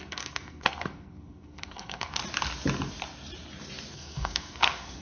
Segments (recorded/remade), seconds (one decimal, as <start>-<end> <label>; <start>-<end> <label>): 0.0-2.2 remade; 2.2-3.9 recorded; 3.9-5.0 remade